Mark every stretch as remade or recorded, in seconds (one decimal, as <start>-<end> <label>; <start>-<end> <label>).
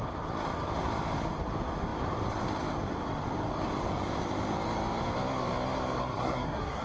0.0-6.0 recorded; 6.0-6.8 remade